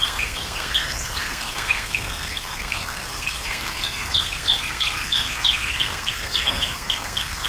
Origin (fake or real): fake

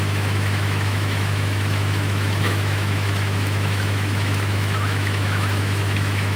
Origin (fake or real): fake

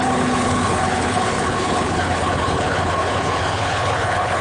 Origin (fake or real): fake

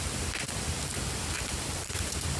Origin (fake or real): real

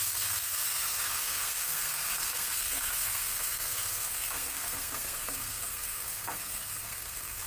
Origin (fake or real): fake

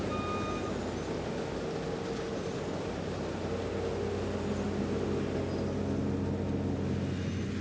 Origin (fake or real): real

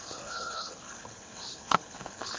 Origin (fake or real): fake